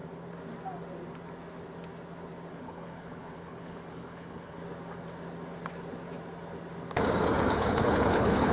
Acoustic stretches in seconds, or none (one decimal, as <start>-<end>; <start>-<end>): 0.0-2.5; 4.6-7.5